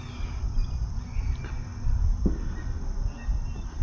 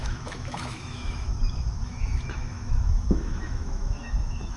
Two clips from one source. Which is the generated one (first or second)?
second